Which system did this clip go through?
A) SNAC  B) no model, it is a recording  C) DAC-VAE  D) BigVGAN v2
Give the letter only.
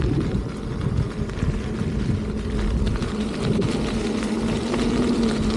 B